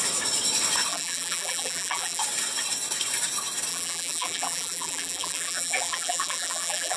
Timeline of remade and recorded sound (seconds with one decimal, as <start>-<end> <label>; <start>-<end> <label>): 0.0-0.9 recorded; 0.9-2.2 remade; 2.2-3.7 recorded; 3.7-7.0 remade